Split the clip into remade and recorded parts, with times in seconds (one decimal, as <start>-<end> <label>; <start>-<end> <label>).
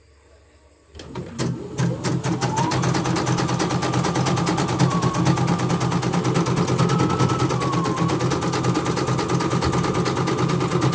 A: 0.0-10.9 recorded